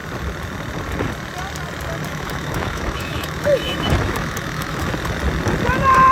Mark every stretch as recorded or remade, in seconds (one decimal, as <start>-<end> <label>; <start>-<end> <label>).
0.0-2.1 recorded; 2.1-4.9 remade; 4.9-6.1 recorded